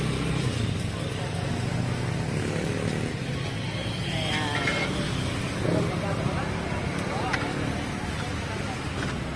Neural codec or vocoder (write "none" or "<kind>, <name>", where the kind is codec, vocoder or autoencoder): none